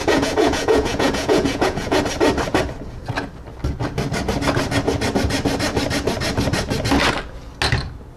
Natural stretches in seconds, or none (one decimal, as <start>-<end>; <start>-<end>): 2.0-8.2